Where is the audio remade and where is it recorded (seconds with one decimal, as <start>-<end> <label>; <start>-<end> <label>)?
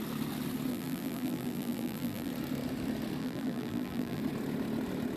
0.0-0.7 recorded; 0.7-2.3 remade; 2.3-3.2 recorded; 3.2-4.2 remade; 4.2-5.2 recorded